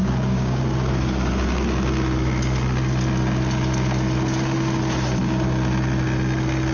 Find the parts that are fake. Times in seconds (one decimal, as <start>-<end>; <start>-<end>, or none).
0.0-0.6